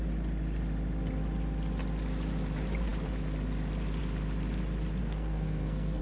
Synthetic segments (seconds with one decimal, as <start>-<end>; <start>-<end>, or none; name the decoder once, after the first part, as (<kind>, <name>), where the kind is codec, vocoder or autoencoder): 5.0-6.0 (codec, SNAC)